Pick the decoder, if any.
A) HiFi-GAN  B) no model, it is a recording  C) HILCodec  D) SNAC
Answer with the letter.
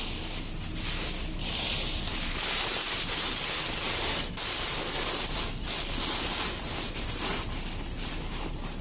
B